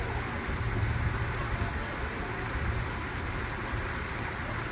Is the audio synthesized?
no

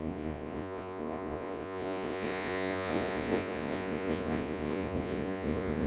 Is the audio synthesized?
yes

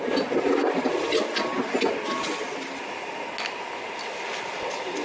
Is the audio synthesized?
no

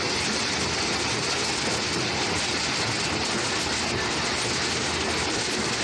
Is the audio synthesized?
no